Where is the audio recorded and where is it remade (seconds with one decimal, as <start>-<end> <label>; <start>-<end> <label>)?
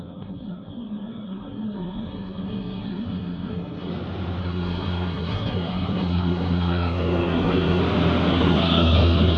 0.0-3.9 remade; 3.9-4.4 recorded; 4.4-7.8 remade; 7.8-8.3 recorded; 8.3-9.4 remade